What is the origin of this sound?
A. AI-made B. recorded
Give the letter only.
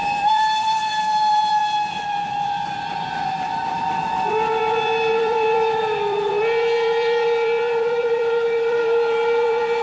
A